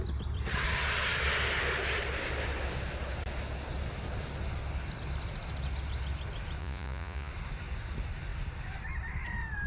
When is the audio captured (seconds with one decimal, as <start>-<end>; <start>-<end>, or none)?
0.0-6.6; 7.3-9.7